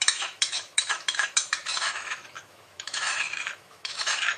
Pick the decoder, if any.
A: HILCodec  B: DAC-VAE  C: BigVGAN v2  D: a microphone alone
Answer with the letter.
B